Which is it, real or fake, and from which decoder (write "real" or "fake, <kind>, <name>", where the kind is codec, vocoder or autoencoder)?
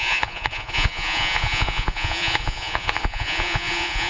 fake, vocoder, Vocos